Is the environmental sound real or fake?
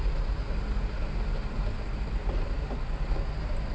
real